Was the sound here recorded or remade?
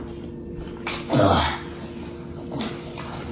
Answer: recorded